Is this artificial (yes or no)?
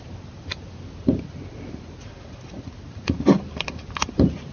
no